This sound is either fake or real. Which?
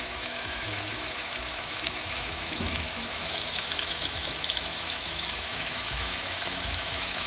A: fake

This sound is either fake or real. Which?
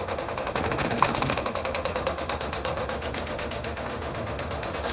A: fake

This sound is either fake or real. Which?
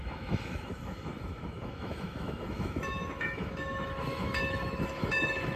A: fake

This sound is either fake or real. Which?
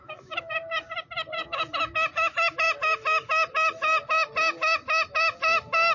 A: fake